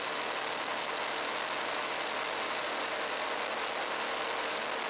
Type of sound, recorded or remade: recorded